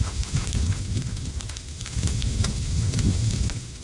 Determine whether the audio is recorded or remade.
remade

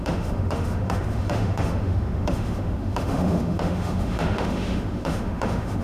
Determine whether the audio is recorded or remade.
remade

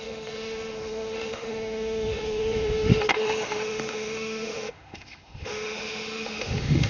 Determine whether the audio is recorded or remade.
remade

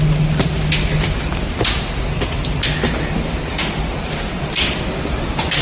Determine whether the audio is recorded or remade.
recorded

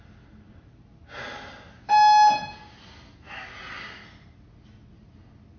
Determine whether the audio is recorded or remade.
recorded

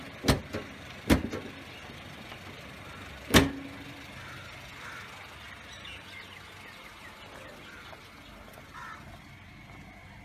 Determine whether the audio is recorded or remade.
recorded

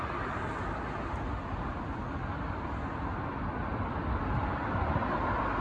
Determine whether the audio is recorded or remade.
recorded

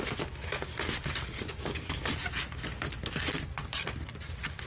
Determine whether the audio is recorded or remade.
recorded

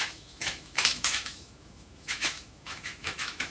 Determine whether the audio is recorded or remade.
remade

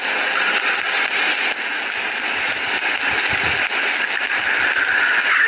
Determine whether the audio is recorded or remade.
recorded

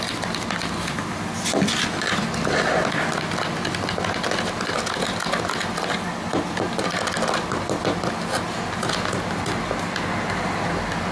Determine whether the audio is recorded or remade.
recorded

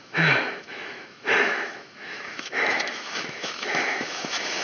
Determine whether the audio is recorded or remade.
remade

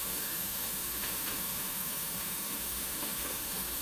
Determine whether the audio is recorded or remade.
remade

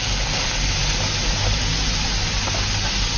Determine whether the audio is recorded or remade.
recorded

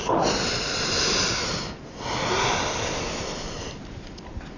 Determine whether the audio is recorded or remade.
recorded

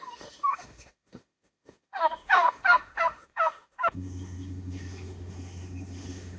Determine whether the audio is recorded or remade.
remade